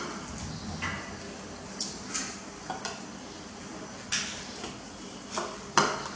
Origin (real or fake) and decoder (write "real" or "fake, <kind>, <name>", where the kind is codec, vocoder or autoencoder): real